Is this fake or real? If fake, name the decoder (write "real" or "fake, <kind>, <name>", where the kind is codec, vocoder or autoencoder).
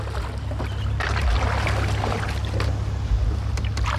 real